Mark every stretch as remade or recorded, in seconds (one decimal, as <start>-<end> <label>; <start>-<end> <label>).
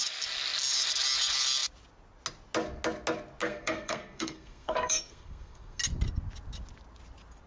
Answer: 0.0-3.4 recorded; 3.4-5.8 remade; 5.8-7.5 recorded